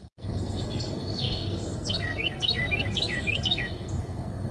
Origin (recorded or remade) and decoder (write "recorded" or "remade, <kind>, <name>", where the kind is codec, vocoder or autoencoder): remade, codec, SNAC